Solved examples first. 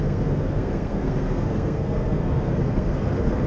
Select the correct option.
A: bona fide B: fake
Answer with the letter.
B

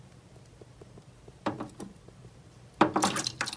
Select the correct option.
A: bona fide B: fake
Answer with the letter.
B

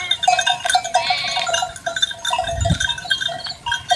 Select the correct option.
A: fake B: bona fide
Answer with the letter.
B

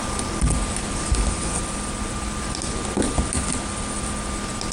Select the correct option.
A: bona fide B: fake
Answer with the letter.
A